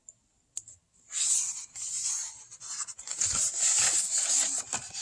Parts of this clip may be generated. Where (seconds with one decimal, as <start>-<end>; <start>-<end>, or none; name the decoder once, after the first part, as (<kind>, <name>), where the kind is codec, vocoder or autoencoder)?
none